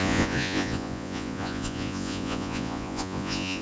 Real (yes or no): no